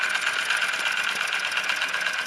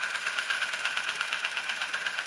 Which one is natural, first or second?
first